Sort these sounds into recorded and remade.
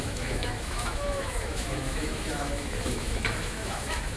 remade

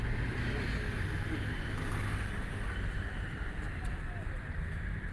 recorded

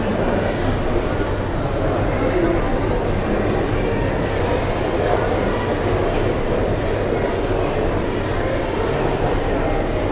recorded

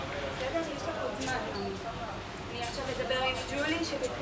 recorded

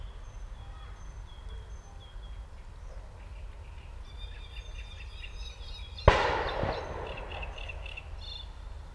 recorded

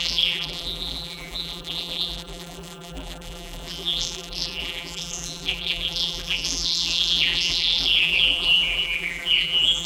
remade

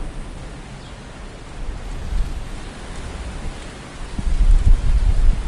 recorded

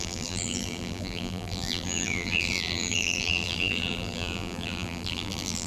remade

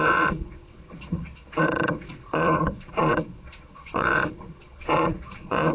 remade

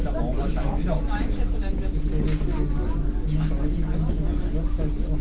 recorded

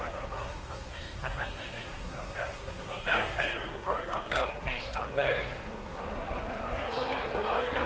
remade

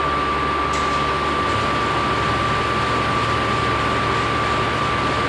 recorded